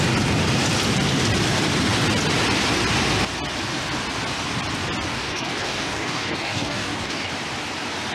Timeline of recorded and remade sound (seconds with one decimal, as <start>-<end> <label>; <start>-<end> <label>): 0.0-5.1 recorded; 5.1-7.3 remade; 7.3-8.1 recorded